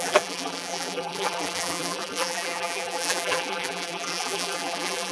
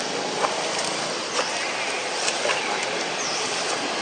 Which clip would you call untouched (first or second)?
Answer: second